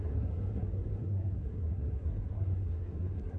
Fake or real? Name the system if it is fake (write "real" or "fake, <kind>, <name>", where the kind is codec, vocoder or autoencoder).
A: fake, codec, SNAC